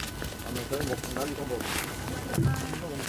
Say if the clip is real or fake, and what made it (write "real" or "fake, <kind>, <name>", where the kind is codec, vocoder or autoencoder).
real